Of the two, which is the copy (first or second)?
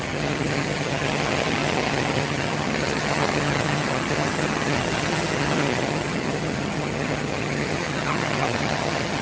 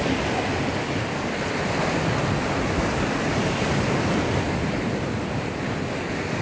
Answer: first